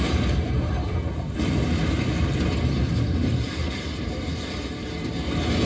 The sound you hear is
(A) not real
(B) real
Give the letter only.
A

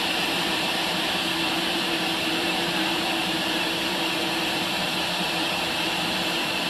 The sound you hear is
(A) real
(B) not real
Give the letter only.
B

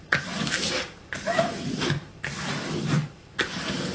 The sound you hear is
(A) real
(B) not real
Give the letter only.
B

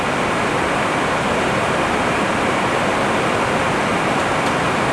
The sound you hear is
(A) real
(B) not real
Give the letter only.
B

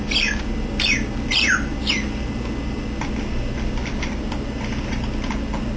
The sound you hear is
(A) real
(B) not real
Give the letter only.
A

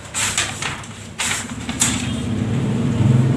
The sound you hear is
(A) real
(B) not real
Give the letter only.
B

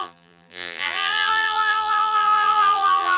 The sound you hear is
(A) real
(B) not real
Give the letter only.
B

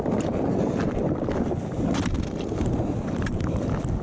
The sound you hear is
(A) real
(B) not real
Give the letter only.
A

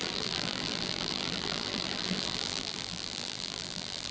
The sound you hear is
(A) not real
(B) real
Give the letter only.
A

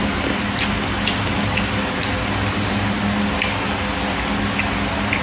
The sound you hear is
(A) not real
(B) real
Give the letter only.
B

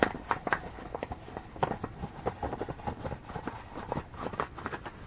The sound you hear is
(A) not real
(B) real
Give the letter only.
B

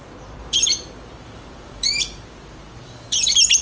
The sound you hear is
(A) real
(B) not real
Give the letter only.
B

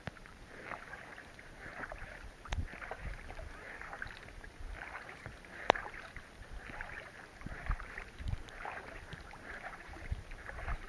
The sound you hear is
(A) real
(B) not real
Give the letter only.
B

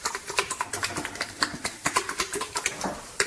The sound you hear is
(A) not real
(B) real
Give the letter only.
A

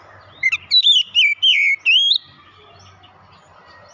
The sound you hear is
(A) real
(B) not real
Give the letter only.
A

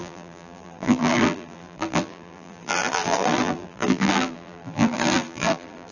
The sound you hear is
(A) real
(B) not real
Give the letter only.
B